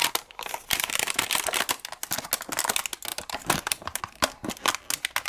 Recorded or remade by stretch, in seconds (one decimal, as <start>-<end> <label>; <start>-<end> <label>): 0.0-1.4 remade; 1.4-3.1 recorded; 3.1-4.0 remade; 4.0-5.3 recorded